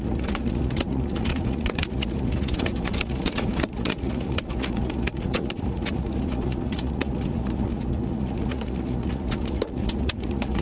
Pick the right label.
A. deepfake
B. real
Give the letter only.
A